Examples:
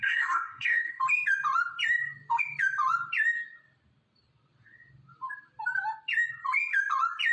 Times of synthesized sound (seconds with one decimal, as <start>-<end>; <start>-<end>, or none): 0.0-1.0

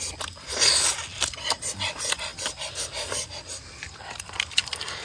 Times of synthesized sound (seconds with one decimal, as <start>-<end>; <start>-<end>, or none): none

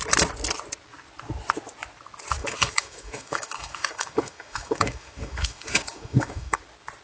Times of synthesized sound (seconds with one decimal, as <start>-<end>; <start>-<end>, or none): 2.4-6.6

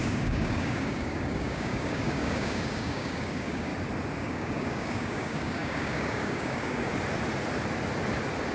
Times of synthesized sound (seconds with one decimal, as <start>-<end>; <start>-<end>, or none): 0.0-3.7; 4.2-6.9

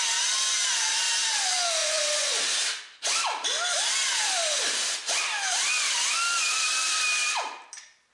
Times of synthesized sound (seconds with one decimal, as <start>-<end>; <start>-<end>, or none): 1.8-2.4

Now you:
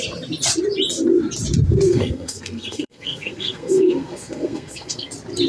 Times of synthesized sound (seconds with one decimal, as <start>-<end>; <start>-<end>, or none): 1.9-5.1

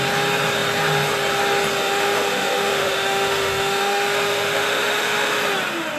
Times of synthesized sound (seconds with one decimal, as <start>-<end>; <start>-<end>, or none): 1.8-5.4